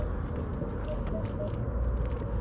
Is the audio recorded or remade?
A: recorded